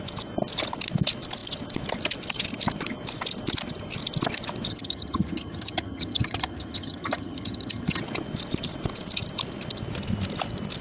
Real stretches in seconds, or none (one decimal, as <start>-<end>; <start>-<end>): 0.0-4.7; 8.0-10.8